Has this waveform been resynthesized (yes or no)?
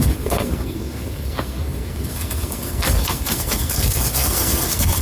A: yes